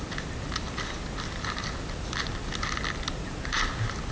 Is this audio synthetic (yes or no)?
no